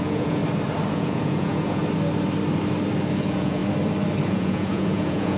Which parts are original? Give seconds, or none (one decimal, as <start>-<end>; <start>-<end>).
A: 0.4-0.9; 1.8-3.2; 3.6-4.3